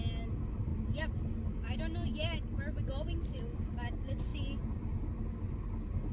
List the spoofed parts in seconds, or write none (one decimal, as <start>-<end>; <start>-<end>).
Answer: none